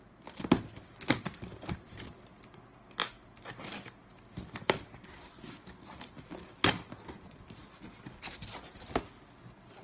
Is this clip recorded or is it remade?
recorded